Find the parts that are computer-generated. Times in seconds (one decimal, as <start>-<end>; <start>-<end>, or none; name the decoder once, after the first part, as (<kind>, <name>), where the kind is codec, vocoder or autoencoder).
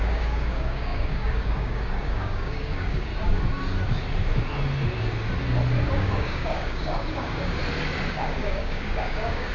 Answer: 0.0-3.1 (codec, DAC); 5.9-7.6; 8.1-9.5